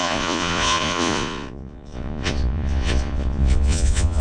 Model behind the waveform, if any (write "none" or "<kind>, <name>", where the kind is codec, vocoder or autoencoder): vocoder, Vocos